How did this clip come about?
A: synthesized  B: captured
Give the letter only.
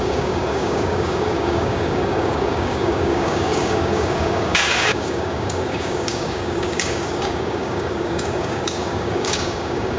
A